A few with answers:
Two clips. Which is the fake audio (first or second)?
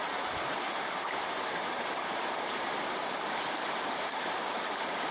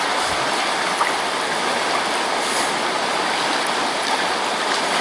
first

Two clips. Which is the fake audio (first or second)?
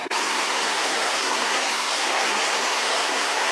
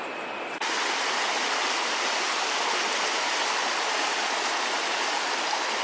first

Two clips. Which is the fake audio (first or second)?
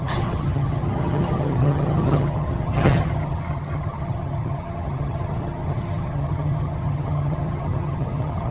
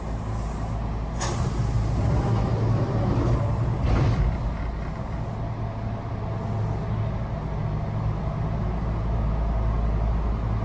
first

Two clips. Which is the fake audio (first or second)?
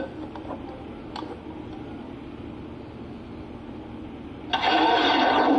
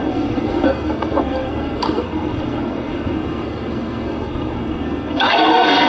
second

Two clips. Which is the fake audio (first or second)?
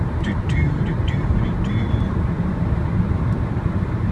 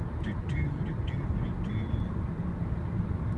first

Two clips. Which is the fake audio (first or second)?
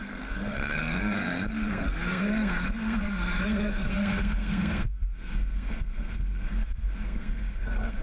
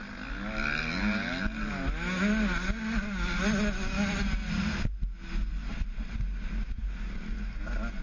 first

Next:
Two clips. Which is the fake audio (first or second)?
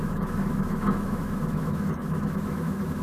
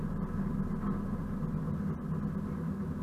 first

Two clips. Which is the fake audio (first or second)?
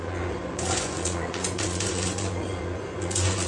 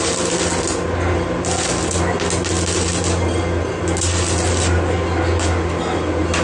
first